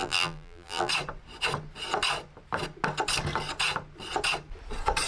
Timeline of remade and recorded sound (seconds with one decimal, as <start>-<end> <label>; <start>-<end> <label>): 0.0-0.9 remade; 0.9-5.1 recorded